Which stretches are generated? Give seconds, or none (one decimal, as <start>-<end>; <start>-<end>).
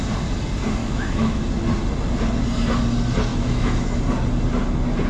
0.8-1.4; 3.3-4.0